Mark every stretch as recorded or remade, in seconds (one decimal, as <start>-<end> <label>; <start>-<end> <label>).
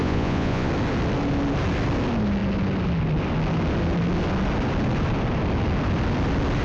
0.0-0.7 remade; 0.7-6.6 recorded